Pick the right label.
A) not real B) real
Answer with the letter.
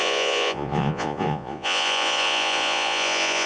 A